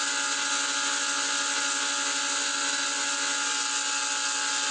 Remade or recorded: recorded